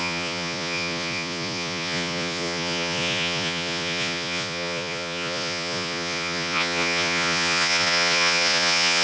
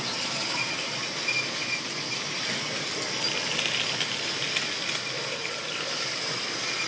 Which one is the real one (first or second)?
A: second